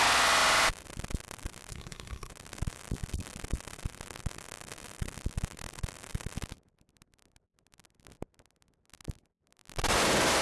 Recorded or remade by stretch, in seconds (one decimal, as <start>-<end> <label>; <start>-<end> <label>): 0.0-1.7 recorded; 1.7-2.3 remade; 2.3-10.4 recorded